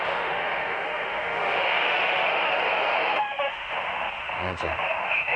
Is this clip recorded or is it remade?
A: remade